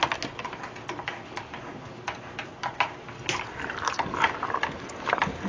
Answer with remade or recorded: recorded